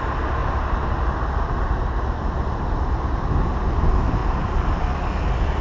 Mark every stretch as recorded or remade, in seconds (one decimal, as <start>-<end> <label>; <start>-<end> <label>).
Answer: 0.0-5.6 recorded